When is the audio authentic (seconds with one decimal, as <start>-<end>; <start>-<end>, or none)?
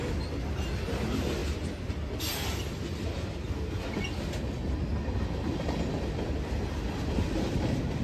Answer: 0.0-8.0